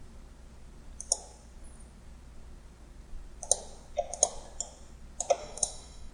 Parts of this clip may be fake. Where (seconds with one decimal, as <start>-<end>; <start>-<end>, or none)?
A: 5.4-6.1